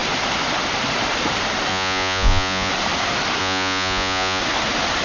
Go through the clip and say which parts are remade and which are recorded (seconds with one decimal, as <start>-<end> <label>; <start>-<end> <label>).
0.0-1.7 recorded; 1.7-2.7 remade; 2.7-3.4 recorded; 3.4-4.4 remade; 4.4-5.0 recorded